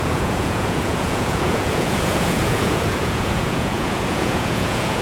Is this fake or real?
fake